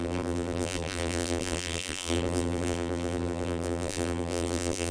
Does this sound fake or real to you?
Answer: fake